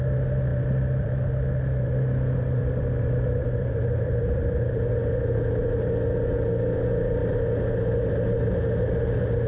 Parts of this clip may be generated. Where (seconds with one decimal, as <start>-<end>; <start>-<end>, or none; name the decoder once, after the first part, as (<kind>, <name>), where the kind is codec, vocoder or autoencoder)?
0.5-1.1 (vocoder, BigVGAN v2); 2.6-5.5